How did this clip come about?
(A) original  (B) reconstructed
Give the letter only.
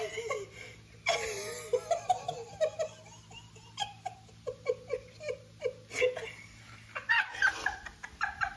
A